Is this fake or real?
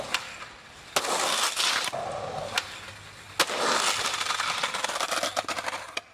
real